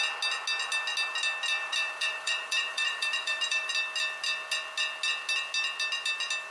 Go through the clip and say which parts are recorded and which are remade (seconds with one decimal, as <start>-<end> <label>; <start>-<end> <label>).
0.0-1.6 recorded; 1.6-3.7 remade; 3.7-6.5 recorded